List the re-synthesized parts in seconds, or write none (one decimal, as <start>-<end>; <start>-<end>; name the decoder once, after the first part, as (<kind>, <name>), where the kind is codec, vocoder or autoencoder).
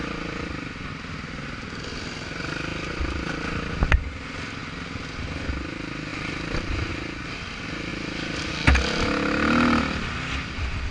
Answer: 6.1-6.9 (vocoder, BigVGAN v2); 7.9-8.5